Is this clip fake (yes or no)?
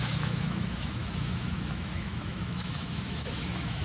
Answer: yes